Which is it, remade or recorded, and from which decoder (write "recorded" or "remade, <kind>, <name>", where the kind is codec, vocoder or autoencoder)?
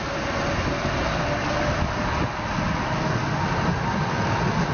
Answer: recorded